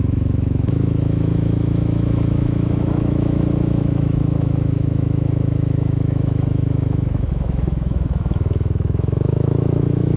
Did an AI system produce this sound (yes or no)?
yes